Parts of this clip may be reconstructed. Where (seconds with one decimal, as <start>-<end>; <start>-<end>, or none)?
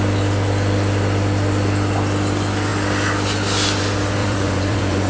4.2-5.1